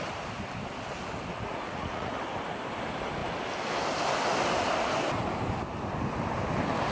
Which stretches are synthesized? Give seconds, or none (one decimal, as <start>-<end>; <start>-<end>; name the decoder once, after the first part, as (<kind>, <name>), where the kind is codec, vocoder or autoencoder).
1.3-2.1 (vocoder, Vocos)